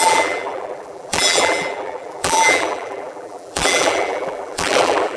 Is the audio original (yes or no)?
no